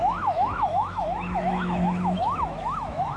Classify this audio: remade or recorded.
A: remade